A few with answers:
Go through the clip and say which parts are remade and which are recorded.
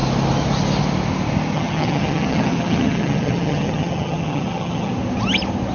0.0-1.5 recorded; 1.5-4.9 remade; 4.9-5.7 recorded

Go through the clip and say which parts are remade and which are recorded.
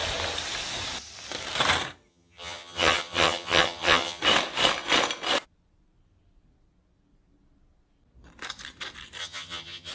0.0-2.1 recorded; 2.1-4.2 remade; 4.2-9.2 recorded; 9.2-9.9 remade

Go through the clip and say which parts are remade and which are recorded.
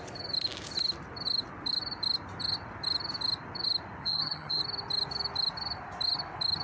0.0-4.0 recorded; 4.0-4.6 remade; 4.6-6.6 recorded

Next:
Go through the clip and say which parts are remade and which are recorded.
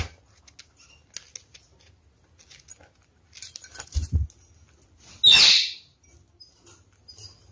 0.0-7.5 recorded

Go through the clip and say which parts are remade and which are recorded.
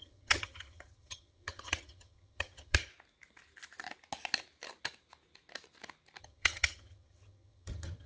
0.0-2.9 remade; 2.9-6.2 recorded; 6.2-8.1 remade